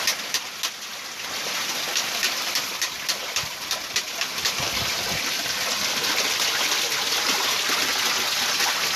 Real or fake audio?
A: real